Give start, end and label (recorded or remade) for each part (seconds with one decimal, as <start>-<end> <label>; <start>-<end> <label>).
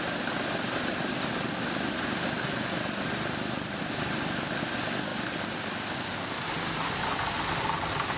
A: 0.0-8.2 recorded